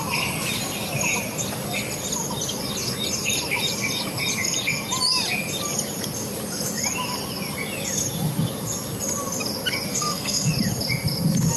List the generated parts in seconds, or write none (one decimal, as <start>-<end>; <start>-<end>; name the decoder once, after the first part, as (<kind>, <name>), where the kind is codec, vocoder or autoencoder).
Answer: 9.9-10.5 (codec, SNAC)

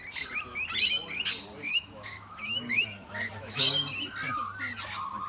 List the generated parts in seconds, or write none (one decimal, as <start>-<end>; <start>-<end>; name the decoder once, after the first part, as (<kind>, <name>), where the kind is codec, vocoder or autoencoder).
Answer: 1.7-3.6 (autoencoder, DAC-VAE)

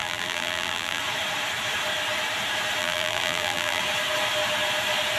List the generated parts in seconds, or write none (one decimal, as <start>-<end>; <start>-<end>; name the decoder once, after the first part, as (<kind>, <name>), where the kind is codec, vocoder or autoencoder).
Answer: 0.0-1.0 (vocoder, BigVGAN v2); 2.8-3.8